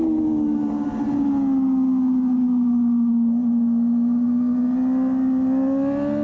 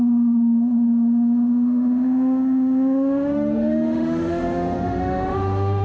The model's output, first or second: second